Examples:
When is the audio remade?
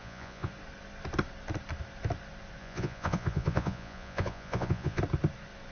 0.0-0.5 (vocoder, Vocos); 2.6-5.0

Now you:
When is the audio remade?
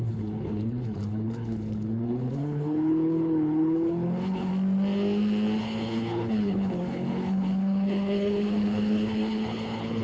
0.0-4.5 (codec, HILCodec); 5.6-10.0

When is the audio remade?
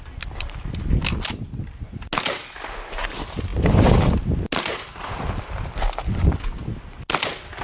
none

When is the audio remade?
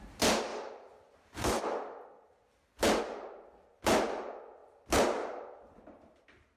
0.5-1.6 (vocoder, BigVGAN v2)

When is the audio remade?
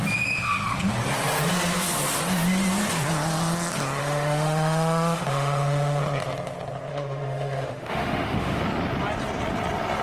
4.0-6.0 (autoencoder, DAC-VAE); 6.9-8.6